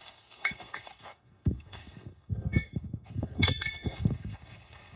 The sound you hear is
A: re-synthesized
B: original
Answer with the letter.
A